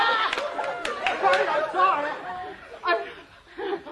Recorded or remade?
recorded